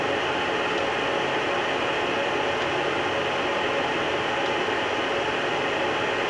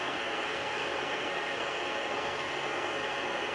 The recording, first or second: first